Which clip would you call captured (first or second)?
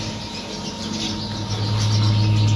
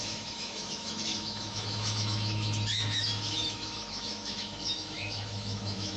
first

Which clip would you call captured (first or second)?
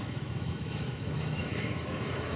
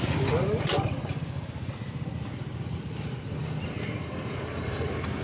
second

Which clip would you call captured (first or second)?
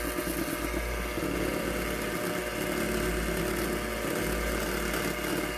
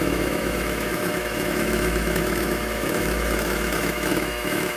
first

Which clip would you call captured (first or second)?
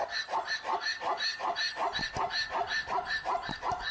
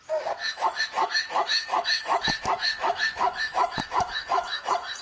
first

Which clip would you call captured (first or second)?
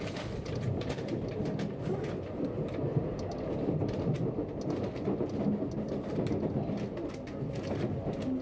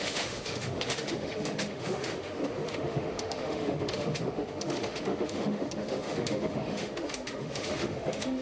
first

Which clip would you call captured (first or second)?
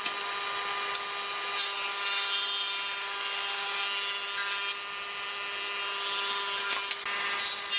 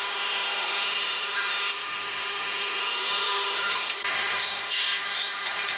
first